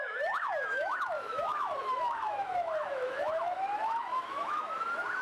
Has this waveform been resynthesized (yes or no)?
yes